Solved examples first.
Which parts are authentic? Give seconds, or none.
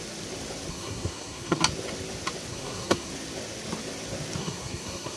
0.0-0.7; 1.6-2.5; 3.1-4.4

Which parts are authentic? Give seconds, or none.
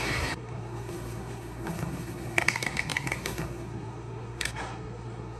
none